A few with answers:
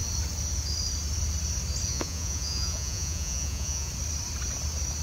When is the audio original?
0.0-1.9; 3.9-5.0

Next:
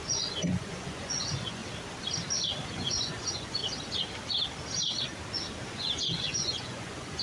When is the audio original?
1.6-2.7; 3.6-5.7

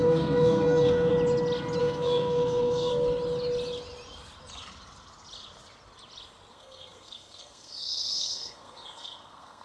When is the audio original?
1.1-1.8; 2.9-6.5